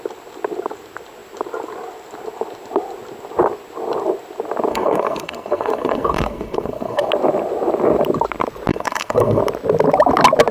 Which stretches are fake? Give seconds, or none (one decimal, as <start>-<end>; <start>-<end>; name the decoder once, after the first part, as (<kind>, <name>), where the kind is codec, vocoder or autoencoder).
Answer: 4.7-7.1 (codec, SNAC); 8.7-9.4